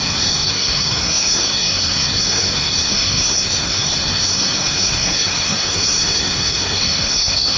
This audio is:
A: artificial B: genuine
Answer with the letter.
A